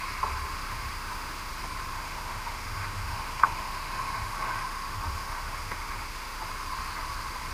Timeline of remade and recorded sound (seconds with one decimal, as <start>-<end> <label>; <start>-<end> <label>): 0.0-0.5 recorded; 0.5-1.5 remade; 1.5-1.9 recorded; 1.9-6.4 remade; 6.4-7.5 recorded